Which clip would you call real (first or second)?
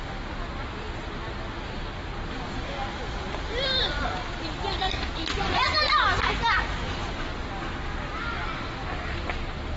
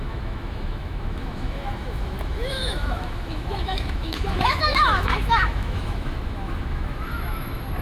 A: first